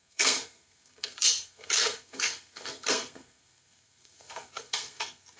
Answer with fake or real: fake